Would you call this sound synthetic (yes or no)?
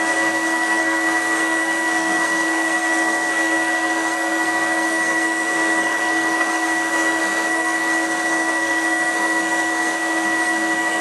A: yes